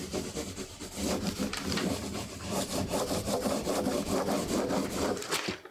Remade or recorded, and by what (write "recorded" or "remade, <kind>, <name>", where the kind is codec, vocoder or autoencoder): remade, vocoder, BigVGAN v2